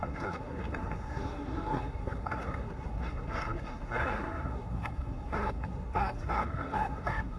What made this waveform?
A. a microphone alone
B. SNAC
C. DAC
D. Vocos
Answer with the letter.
B